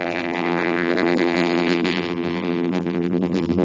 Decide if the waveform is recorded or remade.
remade